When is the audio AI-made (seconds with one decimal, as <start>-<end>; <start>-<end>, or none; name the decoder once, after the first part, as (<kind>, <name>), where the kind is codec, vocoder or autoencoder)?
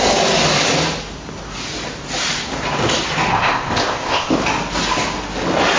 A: 3.3-4.3 (codec, ZipCodec)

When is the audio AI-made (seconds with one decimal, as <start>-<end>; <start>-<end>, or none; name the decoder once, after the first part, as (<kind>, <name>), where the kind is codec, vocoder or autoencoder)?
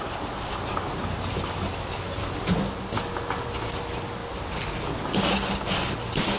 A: none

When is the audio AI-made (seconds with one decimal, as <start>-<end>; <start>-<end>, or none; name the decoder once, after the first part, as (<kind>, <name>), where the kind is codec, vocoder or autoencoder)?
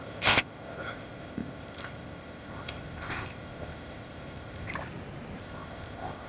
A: 0.0-4.7 (codec, ZipCodec); 5.4-6.3